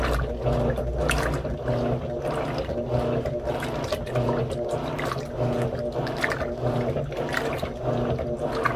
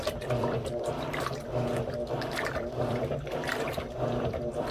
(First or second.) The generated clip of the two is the second